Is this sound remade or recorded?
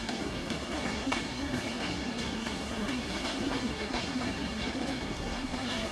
remade